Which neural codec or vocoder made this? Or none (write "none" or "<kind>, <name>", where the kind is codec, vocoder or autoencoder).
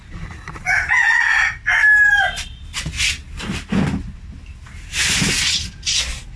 none